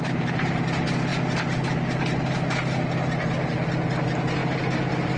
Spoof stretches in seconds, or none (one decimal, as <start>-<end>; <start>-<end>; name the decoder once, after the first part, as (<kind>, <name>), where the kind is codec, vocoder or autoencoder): none